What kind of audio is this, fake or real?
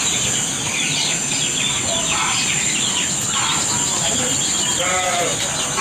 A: real